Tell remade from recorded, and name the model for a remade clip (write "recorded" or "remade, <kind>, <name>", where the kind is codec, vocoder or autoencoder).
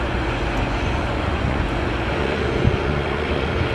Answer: remade, vocoder, Vocos